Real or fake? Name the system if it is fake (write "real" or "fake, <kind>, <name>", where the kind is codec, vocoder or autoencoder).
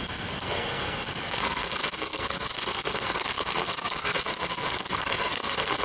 fake, codec, SNAC